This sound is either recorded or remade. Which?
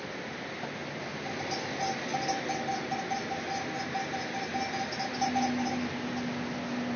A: recorded